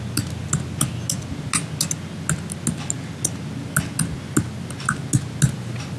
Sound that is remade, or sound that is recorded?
recorded